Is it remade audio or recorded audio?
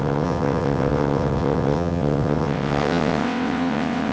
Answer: remade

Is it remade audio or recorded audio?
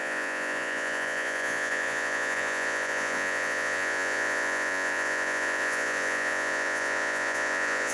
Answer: remade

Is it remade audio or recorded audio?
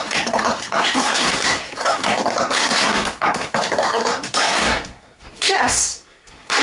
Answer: remade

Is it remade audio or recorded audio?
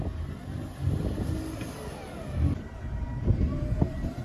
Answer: recorded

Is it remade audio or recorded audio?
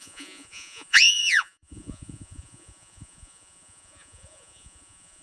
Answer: remade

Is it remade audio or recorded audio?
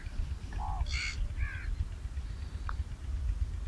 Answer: recorded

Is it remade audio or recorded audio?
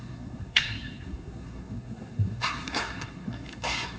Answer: remade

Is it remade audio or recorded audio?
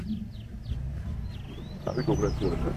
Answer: recorded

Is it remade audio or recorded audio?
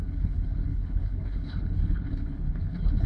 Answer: remade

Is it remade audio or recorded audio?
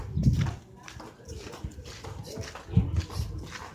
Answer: recorded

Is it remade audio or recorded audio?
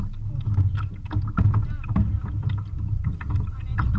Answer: recorded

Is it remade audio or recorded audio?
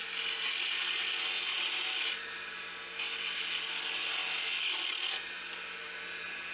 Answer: recorded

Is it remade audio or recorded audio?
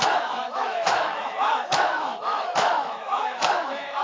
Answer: remade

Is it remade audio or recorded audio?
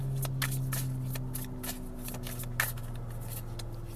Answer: recorded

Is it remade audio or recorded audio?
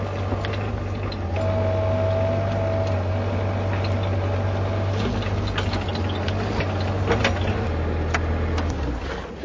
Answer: recorded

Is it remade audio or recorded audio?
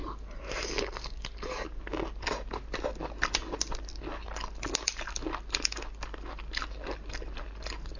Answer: recorded